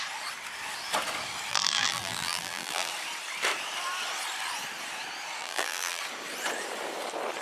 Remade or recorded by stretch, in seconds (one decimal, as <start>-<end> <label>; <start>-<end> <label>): 0.0-1.5 recorded; 1.5-2.9 remade; 2.9-5.4 recorded; 5.4-6.0 remade; 6.0-7.4 recorded